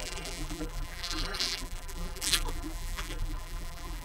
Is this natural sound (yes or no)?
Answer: no